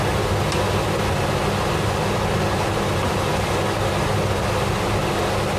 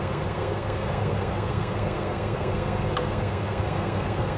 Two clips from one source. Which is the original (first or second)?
first